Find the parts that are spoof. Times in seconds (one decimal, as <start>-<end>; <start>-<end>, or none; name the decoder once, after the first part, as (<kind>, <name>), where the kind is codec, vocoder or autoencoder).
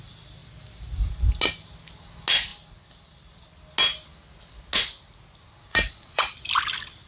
0.4-1.1 (vocoder, BigVGAN v2); 5.7-6.2